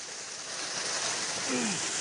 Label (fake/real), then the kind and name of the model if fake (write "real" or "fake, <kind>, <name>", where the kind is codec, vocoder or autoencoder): real